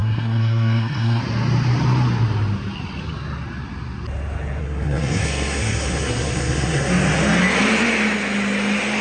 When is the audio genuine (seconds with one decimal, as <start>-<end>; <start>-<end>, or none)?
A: 1.2-4.6; 6.9-9.0